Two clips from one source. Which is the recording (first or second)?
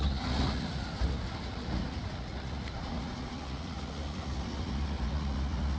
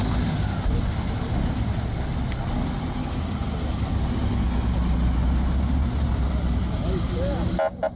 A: second